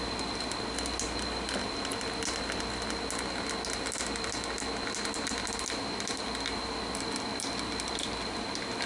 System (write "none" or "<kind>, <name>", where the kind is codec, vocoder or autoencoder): none